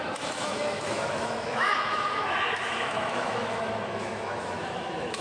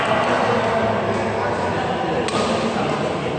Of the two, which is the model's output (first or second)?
first